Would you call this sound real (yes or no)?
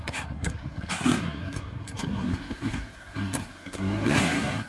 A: no